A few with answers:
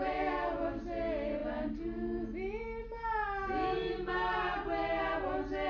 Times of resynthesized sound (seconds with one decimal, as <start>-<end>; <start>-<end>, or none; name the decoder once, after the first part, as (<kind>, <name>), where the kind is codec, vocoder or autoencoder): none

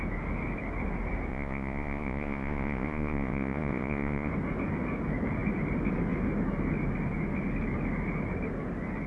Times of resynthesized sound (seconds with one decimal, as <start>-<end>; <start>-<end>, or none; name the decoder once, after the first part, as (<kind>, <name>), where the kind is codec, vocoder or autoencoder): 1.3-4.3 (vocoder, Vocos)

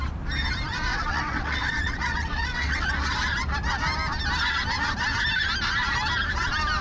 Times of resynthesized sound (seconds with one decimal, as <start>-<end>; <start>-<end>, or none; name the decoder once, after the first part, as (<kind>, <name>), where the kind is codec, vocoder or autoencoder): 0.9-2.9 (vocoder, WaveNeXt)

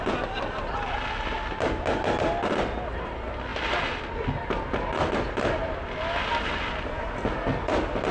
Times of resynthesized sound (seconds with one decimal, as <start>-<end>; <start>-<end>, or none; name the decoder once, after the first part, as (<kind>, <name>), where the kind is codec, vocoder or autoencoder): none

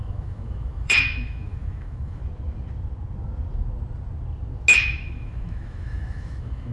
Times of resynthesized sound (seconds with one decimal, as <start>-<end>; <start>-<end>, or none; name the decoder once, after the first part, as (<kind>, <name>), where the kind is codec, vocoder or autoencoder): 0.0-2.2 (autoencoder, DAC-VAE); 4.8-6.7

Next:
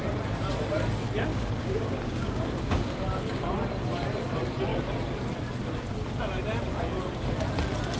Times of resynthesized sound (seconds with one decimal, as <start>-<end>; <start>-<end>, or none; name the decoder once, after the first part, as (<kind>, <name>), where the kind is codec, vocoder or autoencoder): 1.3-3.5 (codec, DAC)

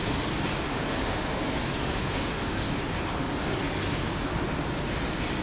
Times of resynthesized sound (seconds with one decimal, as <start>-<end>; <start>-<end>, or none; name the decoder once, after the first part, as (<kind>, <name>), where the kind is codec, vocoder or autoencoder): 0.7-2.8 (autoencoder, DAC-VAE)

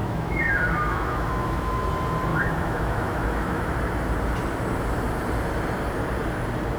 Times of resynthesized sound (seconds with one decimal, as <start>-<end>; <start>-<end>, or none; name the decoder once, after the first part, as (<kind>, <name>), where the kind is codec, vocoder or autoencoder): 0.0-1.9 (autoencoder, DAC-VAE); 2.3-3.7